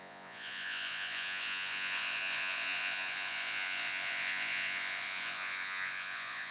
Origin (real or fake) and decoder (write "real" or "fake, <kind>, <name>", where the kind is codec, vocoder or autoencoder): fake, vocoder, Vocos